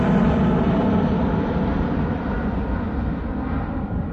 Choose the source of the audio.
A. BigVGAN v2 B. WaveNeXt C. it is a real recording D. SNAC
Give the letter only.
A